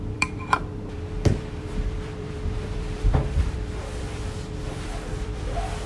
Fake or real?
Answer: fake